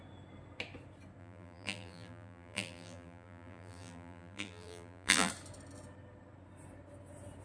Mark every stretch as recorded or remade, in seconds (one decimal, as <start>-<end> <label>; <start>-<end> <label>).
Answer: 0.0-1.2 recorded; 1.2-5.3 remade; 5.3-7.4 recorded